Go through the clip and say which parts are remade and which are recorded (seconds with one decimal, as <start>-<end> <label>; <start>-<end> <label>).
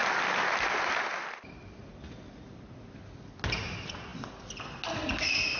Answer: 0.0-5.6 recorded